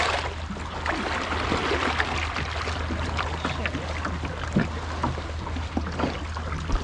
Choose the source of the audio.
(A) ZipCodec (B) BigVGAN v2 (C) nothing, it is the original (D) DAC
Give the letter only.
C